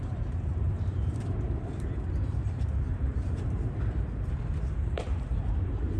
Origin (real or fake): fake